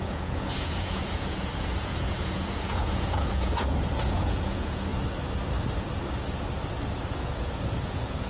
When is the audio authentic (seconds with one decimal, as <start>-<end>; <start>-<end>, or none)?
4.9-6.9